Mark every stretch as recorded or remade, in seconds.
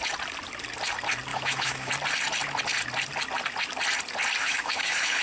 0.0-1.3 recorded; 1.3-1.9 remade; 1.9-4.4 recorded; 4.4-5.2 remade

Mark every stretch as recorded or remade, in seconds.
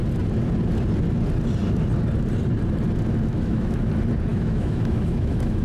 0.0-3.3 recorded; 3.3-3.9 remade; 3.9-4.3 recorded; 4.3-5.6 remade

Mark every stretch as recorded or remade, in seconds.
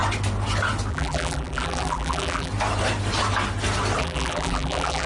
0.0-0.9 recorded; 0.9-2.5 remade; 2.5-4.0 recorded; 4.0-5.1 remade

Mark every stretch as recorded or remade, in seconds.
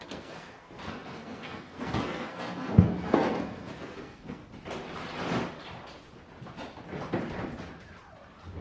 0.0-4.4 remade; 4.4-8.6 recorded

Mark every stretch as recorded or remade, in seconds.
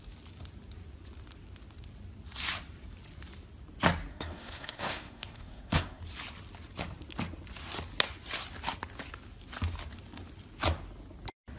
0.0-4.1 recorded; 4.1-6.0 remade; 6.0-11.6 recorded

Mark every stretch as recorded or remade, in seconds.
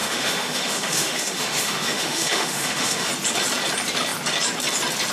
0.0-3.1 remade; 3.1-5.1 recorded